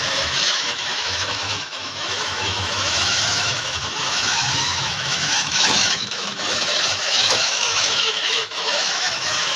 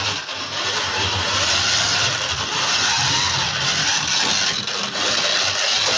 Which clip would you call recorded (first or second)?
second